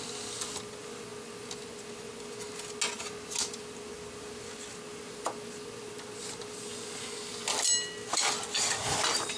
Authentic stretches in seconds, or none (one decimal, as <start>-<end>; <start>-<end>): 0.0-9.4